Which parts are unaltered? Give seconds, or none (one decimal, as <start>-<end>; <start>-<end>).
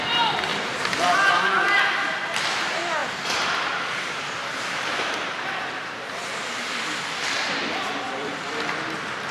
0.0-0.5; 1.1-3.0; 6.7-9.3